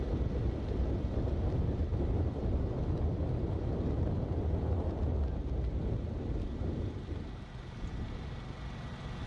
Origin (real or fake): real